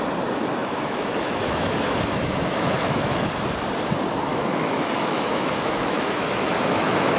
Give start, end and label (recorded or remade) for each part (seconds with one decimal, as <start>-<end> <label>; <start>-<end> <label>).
0.0-0.6 recorded; 0.6-3.3 remade; 3.3-4.3 recorded; 4.3-7.2 remade